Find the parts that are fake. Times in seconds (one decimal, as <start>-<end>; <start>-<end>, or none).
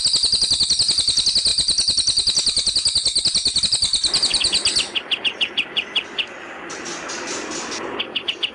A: none